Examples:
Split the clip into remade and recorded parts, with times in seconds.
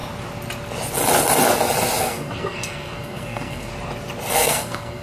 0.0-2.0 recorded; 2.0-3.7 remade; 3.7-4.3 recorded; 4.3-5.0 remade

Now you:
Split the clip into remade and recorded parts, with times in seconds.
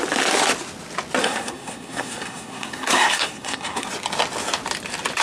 0.0-1.2 recorded; 1.2-3.9 remade; 3.9-5.2 recorded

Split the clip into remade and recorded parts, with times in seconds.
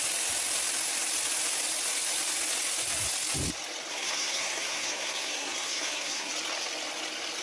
0.0-3.9 recorded; 3.9-6.3 remade; 6.3-7.4 recorded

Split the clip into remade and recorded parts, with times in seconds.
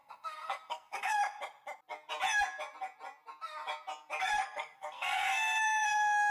0.0-1.2 remade; 1.2-4.2 recorded; 4.2-6.3 remade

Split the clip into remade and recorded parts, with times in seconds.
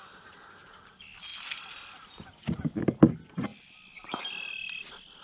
0.0-5.2 recorded